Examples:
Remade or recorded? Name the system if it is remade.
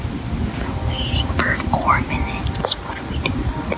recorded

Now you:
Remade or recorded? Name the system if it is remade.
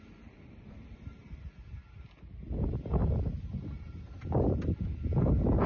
recorded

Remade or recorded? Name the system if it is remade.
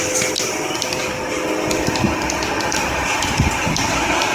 recorded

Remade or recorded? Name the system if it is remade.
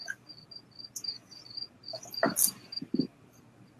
recorded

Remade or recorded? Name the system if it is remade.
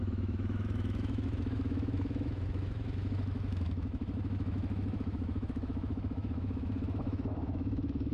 remade, autoencoder, DAC-VAE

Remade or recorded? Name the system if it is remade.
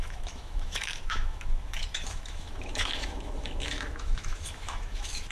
remade, autoencoder, DAC-VAE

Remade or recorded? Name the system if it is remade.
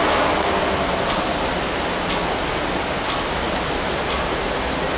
recorded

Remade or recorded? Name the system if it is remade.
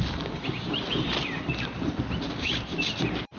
recorded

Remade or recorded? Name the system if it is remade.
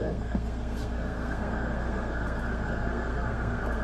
remade, codec, SNAC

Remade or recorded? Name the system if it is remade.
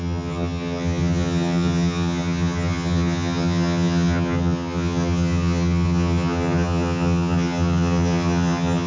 remade, vocoder, HiFi-GAN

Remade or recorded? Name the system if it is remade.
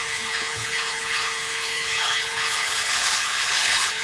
remade, codec, HILCodec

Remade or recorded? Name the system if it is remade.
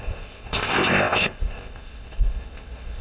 remade, codec, ZipCodec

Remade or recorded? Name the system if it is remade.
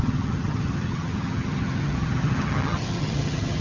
remade, vocoder, HiFi-GAN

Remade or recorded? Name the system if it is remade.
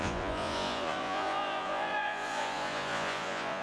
remade, vocoder, Vocos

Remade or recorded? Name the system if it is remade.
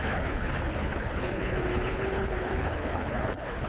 remade, codec, HILCodec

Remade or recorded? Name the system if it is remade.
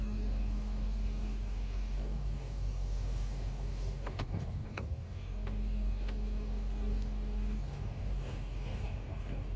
remade, codec, DAC